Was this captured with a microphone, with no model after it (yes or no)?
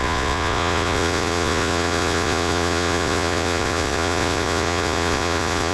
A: no